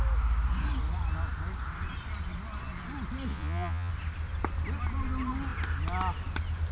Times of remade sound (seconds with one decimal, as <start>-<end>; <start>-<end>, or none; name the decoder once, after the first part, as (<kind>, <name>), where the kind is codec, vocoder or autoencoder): 3.3-3.9 (vocoder, Vocos)